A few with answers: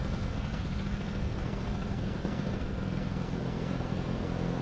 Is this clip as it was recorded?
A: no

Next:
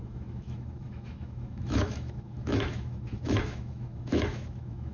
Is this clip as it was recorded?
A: no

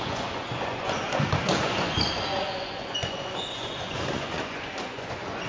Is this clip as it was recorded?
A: no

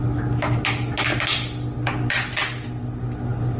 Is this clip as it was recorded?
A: yes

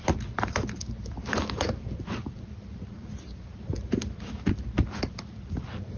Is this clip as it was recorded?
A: no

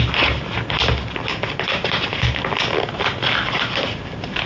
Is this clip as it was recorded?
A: yes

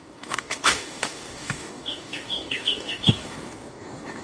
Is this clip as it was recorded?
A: no